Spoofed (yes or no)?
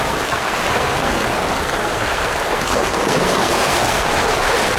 yes